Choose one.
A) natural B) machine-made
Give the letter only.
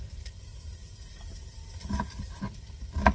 A